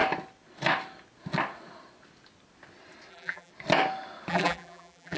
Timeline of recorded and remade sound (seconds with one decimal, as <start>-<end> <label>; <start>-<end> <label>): 0.0-3.1 recorded; 3.1-3.5 remade; 3.5-4.3 recorded; 4.3-5.2 remade